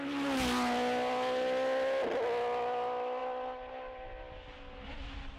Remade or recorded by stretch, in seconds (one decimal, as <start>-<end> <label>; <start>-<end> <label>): 0.0-5.4 recorded